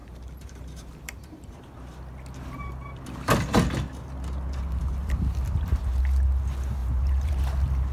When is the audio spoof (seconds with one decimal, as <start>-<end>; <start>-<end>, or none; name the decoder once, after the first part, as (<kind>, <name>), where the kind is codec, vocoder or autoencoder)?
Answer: 0.0-2.0 (vocoder, BigVGAN v2); 5.0-6.0; 6.8-7.3